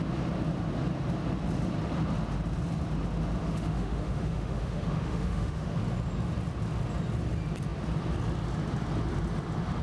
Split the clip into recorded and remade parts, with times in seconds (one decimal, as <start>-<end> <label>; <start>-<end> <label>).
0.0-3.4 recorded; 3.4-5.8 remade; 5.8-9.8 recorded